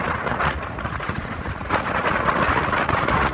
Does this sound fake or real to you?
fake